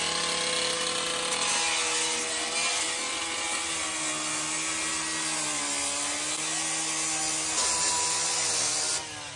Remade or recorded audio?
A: recorded